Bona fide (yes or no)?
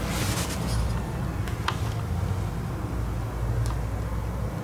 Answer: yes